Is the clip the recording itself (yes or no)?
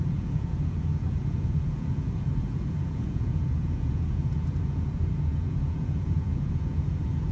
no